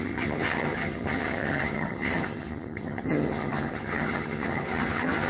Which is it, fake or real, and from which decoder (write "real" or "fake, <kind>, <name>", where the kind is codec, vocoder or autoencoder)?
fake, vocoder, HiFi-GAN